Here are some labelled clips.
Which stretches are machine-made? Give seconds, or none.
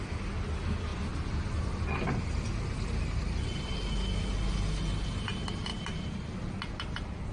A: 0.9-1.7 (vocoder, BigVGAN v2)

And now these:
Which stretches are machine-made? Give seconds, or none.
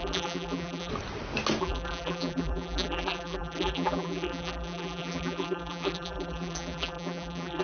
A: 0.0-0.9 (vocoder, BigVGAN v2); 1.6-7.6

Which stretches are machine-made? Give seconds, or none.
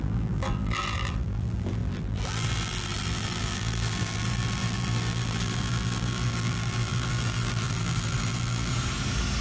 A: 0.0-8.7 (vocoder, BigVGAN v2)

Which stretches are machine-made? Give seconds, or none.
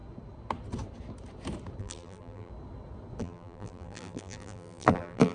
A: 1.8-2.5 (vocoder, BigVGAN v2); 3.2-5.3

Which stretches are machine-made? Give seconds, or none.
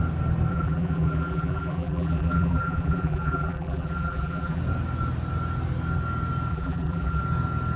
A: 0.5-4.6 (vocoder, BigVGAN v2); 6.5-7.2